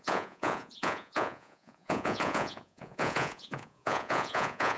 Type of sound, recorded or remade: remade